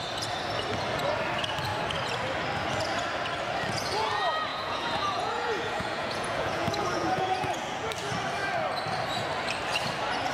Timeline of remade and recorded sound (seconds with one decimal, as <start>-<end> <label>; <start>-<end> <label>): 0.0-4.5 recorded; 4.5-7.9 remade; 7.9-10.3 recorded